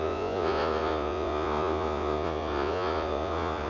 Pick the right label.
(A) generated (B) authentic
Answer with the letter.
A